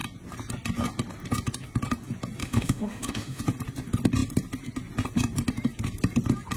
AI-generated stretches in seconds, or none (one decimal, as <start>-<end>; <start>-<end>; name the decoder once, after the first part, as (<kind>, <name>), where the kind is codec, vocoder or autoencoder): 2.4-3.4 (autoencoder, DAC-VAE)